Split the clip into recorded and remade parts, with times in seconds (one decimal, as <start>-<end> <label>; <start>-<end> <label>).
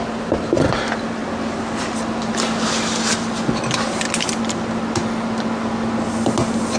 0.0-6.8 recorded